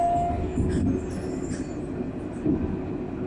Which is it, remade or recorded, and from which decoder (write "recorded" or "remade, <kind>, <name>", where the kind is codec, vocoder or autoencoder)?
recorded